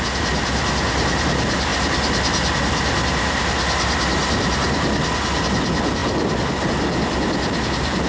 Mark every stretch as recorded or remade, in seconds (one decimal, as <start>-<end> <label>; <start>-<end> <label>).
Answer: 0.0-8.1 recorded